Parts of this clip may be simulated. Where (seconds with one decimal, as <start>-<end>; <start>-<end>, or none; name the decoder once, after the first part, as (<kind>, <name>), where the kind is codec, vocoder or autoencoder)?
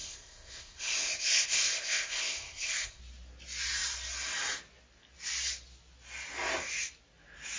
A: 0.0-3.0 (codec, ZipCodec)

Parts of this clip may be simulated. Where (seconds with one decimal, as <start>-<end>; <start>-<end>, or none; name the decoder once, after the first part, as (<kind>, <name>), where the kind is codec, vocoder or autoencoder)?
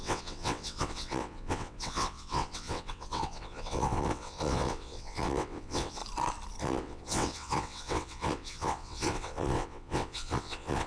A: 0.0-6.0 (vocoder, WaveNeXt); 6.6-10.9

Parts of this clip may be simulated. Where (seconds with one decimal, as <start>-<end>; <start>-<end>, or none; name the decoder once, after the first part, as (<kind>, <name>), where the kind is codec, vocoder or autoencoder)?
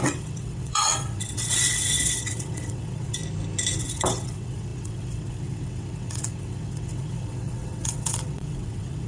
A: 0.0-3.2 (vocoder, WaveNeXt); 3.8-9.1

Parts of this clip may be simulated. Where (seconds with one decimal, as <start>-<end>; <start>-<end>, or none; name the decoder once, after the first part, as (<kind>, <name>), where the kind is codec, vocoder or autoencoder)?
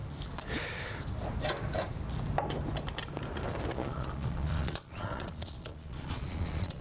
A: 3.7-6.8 (vocoder, Vocos)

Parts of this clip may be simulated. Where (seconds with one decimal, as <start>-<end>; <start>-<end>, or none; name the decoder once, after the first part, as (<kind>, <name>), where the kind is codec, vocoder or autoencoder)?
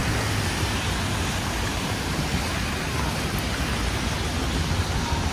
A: none